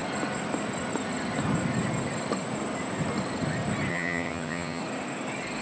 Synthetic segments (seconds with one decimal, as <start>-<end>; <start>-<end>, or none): 3.9-4.8